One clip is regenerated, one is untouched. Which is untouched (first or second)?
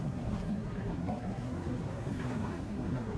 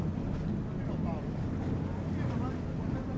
second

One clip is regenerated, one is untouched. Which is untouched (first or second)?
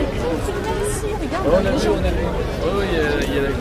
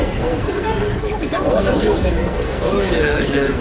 first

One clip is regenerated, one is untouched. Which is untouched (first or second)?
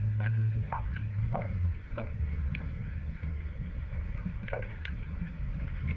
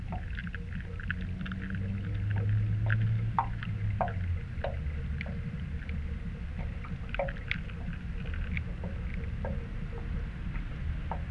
second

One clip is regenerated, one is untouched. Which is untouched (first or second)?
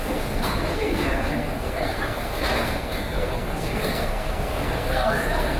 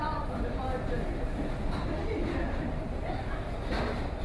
second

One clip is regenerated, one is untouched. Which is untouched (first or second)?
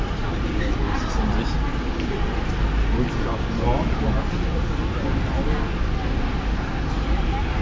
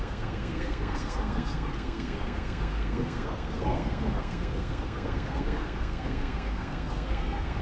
first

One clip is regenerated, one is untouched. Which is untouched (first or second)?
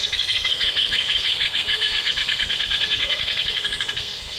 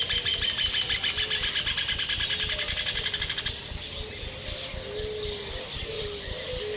second